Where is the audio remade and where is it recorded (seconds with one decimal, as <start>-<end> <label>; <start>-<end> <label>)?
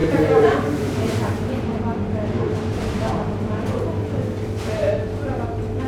0.0-3.1 remade; 3.1-5.9 recorded